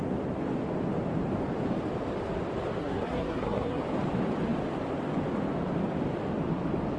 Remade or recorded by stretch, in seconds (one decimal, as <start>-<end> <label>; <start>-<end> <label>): 0.0-2.8 recorded; 2.8-3.8 remade; 3.8-7.0 recorded